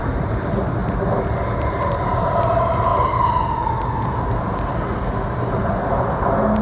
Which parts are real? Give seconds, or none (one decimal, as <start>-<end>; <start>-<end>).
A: 0.8-2.2; 2.9-6.6